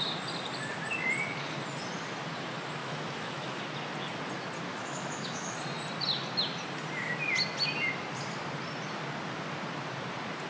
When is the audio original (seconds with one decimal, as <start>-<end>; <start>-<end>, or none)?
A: 0.0-2.8; 3.6-4.7; 5.6-10.5